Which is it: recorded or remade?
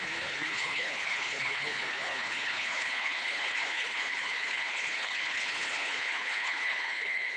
remade